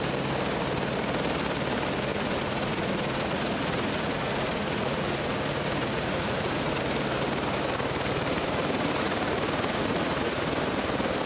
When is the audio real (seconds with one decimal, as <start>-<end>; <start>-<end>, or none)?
0.0-2.1; 6.8-8.4; 10.5-11.3

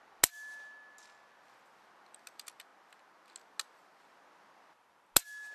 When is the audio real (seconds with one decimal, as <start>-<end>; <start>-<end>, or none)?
0.0-5.5

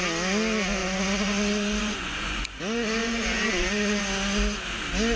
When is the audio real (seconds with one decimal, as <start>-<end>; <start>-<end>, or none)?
0.0-0.8; 2.6-3.0; 4.0-5.2